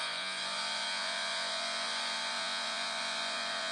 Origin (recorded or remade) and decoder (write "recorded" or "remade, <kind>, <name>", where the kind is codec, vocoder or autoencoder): remade, vocoder, Vocos